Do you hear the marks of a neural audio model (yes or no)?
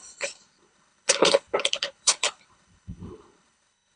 yes